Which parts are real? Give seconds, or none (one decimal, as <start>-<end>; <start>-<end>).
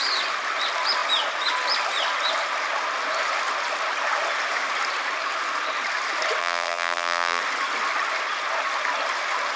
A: 0.0-6.4; 7.4-9.6